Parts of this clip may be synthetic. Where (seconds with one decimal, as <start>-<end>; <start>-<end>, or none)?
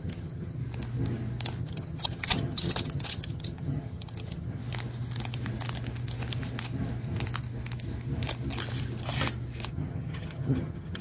0.0-0.6; 1.6-4.6; 9.7-11.0